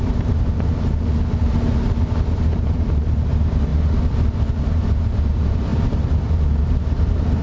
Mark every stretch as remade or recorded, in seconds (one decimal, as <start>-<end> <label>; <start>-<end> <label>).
0.0-0.9 remade; 0.9-1.4 recorded; 1.4-3.7 remade; 3.7-4.5 recorded; 4.5-7.4 remade